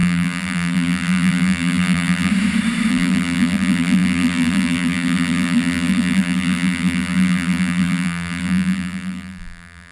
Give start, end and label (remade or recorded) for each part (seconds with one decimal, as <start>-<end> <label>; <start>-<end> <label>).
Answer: 0.0-2.3 remade; 2.3-2.9 recorded; 2.9-9.9 remade

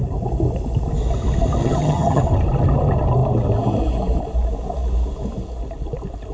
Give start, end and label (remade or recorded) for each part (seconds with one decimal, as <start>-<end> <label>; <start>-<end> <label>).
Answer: 0.0-1.6 recorded; 1.6-2.2 remade; 2.2-6.3 recorded